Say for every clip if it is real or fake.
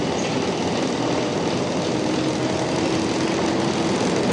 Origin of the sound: real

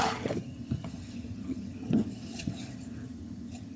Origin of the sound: fake